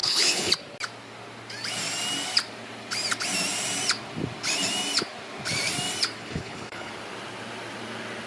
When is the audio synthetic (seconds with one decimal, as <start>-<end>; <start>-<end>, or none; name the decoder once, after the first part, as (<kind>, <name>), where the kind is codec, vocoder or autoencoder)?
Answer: 0.0-0.5 (codec, HILCodec); 6.2-6.9